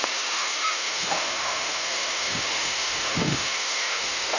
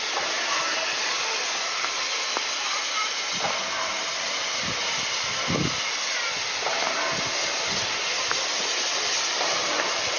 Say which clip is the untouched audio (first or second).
second